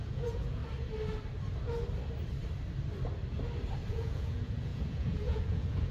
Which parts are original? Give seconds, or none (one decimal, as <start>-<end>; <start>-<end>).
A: 0.6-3.9